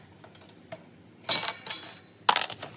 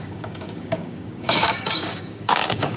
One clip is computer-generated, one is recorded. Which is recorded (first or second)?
first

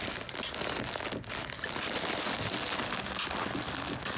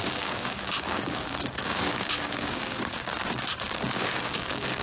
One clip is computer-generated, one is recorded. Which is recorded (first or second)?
first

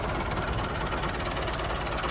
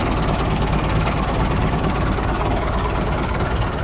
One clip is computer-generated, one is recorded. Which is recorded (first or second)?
first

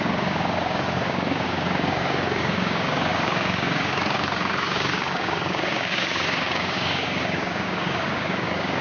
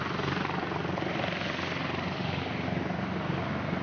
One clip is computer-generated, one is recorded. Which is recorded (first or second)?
second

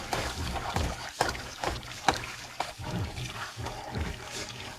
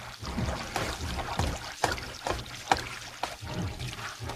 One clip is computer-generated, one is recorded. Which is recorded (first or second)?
second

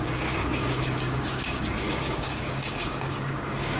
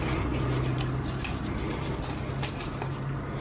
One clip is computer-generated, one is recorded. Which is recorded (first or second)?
second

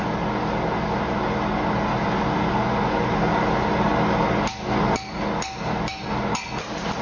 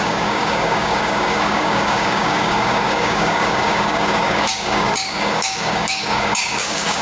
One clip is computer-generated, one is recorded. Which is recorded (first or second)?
first